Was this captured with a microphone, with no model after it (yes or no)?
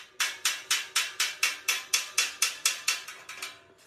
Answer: yes